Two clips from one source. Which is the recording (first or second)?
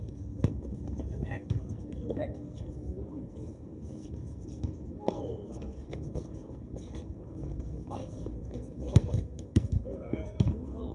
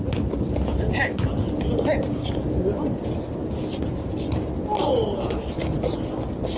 second